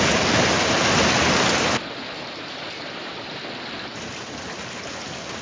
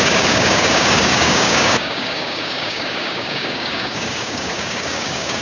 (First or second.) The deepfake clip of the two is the second